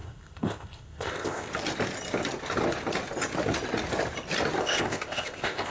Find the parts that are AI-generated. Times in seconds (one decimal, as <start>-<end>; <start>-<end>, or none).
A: 0.0-1.5; 4.6-5.7